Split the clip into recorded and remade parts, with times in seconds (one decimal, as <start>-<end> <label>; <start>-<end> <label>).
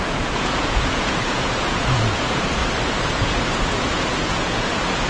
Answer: 0.0-2.6 remade; 2.6-3.1 recorded; 3.1-5.1 remade